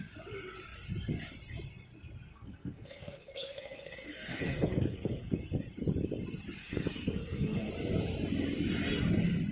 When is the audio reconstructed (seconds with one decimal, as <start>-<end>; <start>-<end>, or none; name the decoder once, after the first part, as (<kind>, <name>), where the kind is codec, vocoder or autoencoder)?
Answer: 2.3-5.4 (codec, SNAC); 6.6-7.7